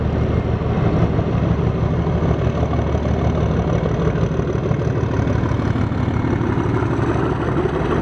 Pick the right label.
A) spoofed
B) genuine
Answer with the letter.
B